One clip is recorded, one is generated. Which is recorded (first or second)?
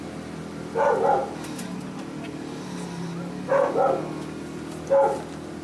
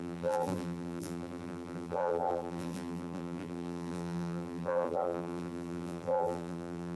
first